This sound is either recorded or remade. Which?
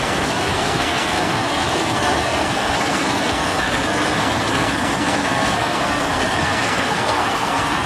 remade